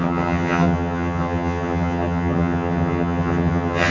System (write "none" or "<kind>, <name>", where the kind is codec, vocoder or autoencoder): vocoder, HiFi-GAN